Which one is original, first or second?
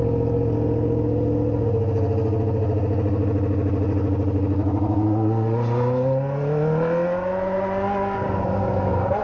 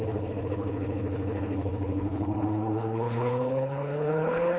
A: first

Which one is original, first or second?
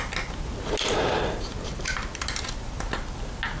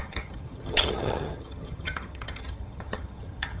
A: first